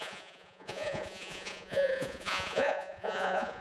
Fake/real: fake